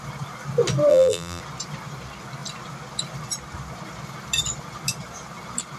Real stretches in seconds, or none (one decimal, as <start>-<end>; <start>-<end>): 0.0-0.9; 1.4-5.8